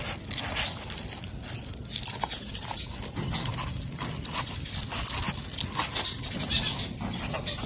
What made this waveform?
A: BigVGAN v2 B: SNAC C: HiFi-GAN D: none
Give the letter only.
D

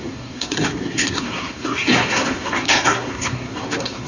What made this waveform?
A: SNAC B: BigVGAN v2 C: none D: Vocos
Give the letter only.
A